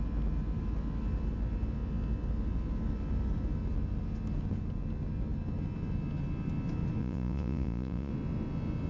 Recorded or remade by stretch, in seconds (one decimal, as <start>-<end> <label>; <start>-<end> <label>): 0.0-7.0 recorded; 7.0-8.1 remade; 8.1-8.9 recorded